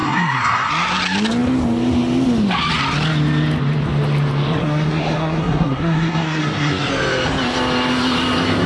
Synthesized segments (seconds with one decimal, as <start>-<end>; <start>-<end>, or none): 0.0-0.7; 4.6-6.9